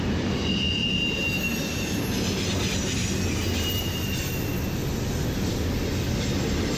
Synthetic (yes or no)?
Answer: no